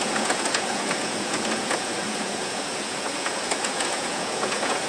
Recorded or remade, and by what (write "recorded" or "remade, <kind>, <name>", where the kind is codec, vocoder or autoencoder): remade, vocoder, Vocos